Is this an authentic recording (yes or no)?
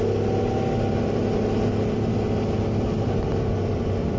yes